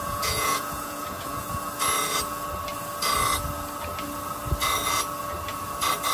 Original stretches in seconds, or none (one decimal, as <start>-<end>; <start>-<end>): 1.5-6.1